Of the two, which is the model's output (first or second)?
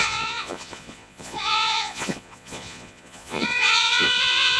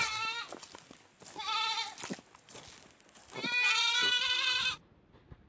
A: first